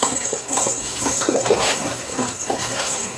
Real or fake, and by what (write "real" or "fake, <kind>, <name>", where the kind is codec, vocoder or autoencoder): fake, codec, SNAC